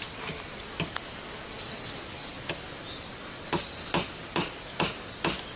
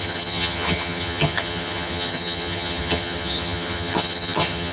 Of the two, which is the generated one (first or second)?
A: second